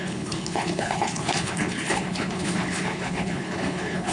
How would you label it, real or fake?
fake